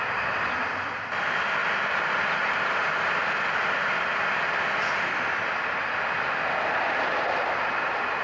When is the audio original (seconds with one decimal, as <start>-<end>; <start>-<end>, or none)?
0.0-8.2